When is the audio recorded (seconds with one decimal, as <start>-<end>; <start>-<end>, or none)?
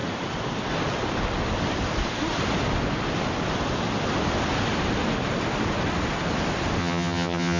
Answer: 0.0-6.8